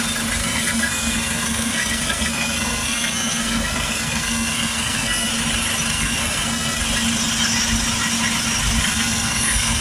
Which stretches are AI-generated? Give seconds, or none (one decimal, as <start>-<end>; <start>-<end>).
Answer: 0.4-5.3; 5.9-6.8; 8.8-9.8